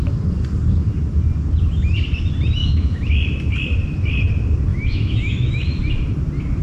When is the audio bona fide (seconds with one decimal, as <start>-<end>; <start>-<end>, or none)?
0.0-2.6; 3.1-4.7; 5.8-6.6